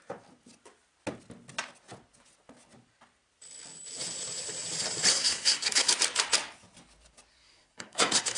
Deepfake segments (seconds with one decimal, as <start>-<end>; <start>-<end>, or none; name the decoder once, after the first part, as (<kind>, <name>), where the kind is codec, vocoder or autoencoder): 5.1-5.9 (codec, SNAC); 7.3-8.4